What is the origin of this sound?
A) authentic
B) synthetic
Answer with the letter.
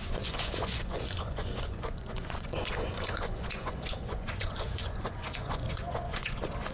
B